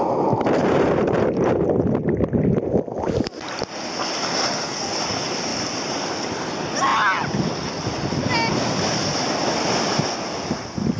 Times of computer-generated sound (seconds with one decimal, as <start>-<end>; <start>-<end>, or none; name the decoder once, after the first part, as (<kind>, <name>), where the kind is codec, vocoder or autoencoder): 0.6-1.6 (vocoder, BigVGAN v2); 5.5-6.1

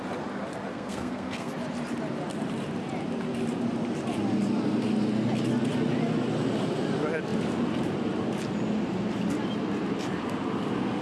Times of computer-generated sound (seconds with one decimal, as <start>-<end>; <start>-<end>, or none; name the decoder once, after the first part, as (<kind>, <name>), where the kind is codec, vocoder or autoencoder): 0.7-1.5 (codec, SNAC)

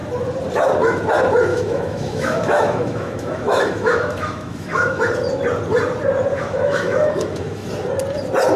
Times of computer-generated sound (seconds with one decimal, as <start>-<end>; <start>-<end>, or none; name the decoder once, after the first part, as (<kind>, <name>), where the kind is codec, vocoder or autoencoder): 1.5-5.0 (autoencoder, DAC-VAE); 6.3-7.7

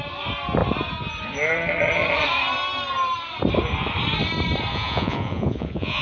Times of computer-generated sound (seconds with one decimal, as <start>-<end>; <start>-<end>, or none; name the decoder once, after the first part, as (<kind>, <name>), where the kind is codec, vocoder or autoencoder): 4.7-6.0 (vocoder, Vocos)

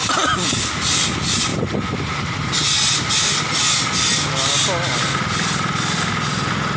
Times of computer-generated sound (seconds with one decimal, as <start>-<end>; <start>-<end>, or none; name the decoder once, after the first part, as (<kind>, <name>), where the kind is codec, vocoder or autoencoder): none